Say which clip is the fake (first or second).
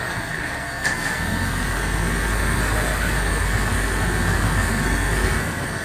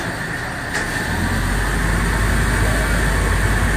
first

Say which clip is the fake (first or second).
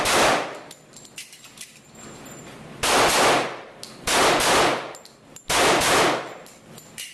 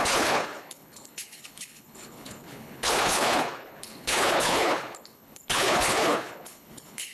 second